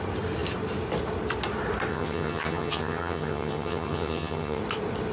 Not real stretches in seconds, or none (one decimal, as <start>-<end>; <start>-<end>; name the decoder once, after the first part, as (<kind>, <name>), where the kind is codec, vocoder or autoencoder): 1.9-4.6 (vocoder, HiFi-GAN)

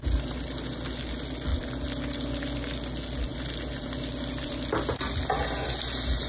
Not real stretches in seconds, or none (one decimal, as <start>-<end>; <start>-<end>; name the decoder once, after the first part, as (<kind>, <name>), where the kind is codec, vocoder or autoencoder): none

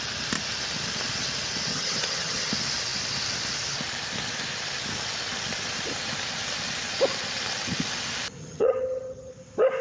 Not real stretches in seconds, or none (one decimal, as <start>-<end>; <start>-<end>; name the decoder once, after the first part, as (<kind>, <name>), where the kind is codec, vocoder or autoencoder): 1.7-2.5 (vocoder, HiFi-GAN); 8.4-9.3